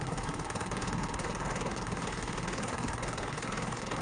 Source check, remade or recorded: remade